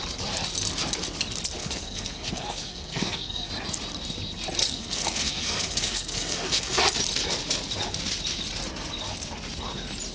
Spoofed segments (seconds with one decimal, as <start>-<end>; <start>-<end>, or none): 1.6-3.5; 4.6-6.8